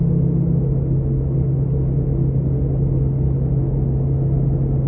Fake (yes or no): no